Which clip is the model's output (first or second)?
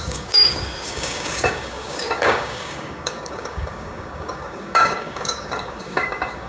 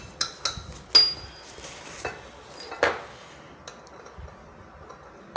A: first